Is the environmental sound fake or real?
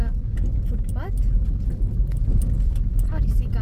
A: real